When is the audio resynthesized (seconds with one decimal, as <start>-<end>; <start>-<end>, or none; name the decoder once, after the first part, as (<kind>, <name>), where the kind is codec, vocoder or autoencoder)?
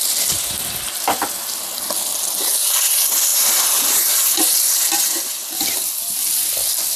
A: none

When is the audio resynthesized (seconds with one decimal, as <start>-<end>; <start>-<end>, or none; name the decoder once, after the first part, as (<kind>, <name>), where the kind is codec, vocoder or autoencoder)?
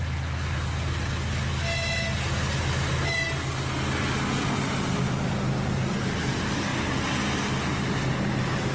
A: none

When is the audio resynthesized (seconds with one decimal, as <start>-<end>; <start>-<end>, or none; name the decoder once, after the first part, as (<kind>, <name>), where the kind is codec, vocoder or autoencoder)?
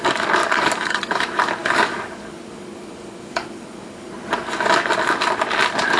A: 0.4-1.2 (codec, DAC); 1.6-4.1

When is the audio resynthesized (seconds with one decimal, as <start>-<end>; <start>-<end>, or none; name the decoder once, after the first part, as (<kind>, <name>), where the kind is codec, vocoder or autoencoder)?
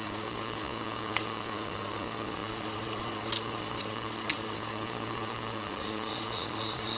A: 0.0-7.0 (vocoder, Vocos)